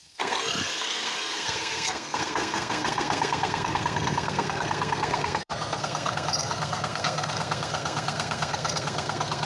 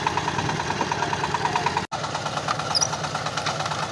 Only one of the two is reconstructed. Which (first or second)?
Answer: first